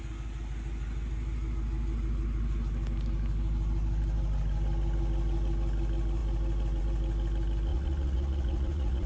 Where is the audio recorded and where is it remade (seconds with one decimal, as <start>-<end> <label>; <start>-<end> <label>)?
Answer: 0.0-7.7 recorded; 7.7-9.1 remade